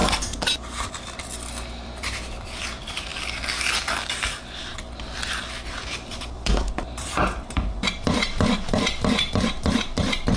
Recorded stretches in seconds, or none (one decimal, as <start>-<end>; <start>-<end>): 0.0-0.8; 3.1-3.8